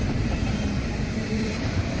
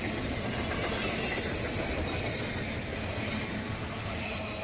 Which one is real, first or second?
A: second